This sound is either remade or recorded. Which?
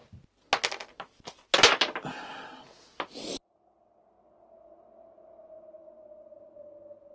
recorded